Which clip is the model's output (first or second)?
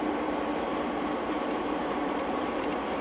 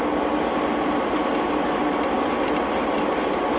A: first